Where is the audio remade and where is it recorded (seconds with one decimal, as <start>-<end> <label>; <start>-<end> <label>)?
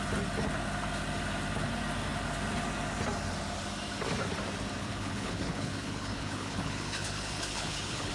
0.0-4.8 recorded; 4.8-8.1 remade